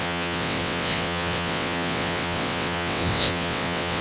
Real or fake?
fake